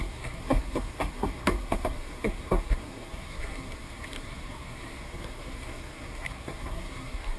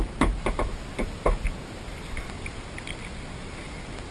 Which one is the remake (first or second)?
first